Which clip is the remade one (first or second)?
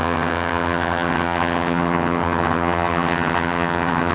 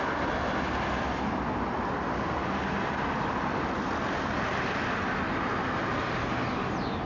first